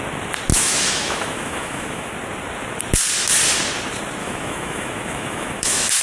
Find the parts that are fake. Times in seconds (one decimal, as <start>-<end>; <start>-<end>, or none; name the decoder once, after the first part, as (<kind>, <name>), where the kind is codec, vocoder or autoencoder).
0.5-2.1 (autoencoder, DAC-VAE); 4.2-6.0